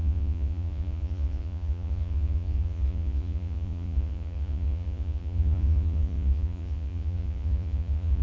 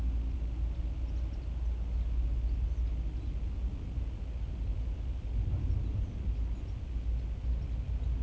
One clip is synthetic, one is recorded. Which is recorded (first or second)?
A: second